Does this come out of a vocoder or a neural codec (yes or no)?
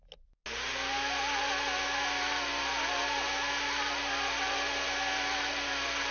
no